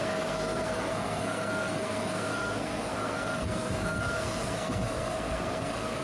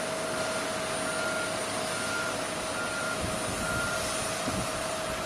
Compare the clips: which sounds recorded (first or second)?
second